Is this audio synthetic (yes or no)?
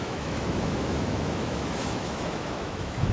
yes